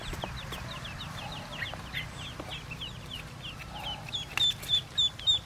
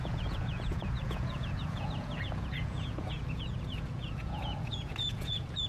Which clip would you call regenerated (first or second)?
second